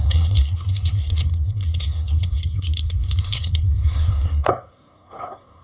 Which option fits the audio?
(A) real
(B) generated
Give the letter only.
B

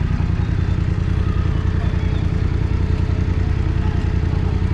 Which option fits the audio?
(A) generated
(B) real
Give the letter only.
B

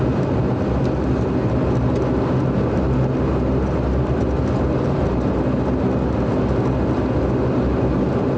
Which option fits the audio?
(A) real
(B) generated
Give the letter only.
A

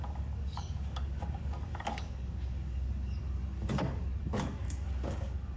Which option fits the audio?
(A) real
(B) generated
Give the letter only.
B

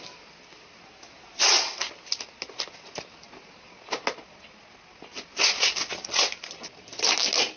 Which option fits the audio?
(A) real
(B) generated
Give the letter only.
A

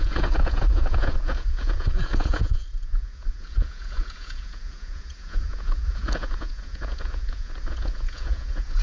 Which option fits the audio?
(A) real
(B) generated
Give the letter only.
B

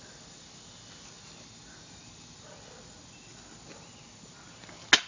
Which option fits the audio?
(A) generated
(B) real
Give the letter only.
B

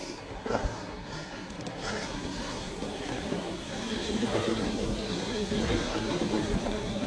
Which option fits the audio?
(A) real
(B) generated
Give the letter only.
B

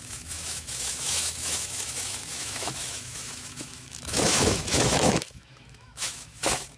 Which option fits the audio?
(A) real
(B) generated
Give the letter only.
B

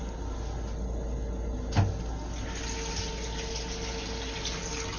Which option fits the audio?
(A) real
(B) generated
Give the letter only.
A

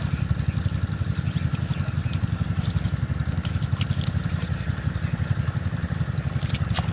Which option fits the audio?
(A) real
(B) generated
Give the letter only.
A